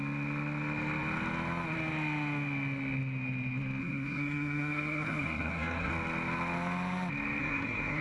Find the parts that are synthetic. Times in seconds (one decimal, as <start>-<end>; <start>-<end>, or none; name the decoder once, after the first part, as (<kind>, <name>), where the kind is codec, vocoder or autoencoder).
3.8-5.9 (codec, SNAC); 7.4-8.0